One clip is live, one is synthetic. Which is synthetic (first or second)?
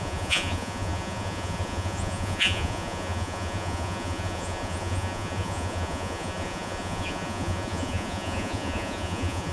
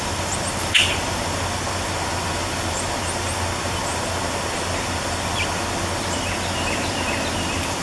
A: first